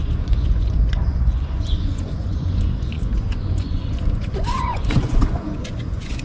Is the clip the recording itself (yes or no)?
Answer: no